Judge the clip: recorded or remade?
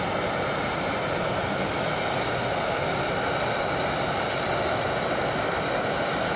recorded